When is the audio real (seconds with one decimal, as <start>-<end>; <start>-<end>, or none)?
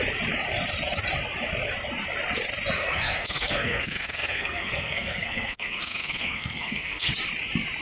0.0-2.8; 7.1-7.8